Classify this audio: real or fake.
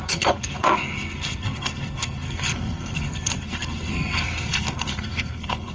fake